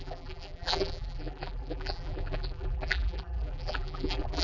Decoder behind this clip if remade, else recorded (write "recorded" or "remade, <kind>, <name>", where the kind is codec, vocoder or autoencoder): remade, vocoder, BigVGAN v2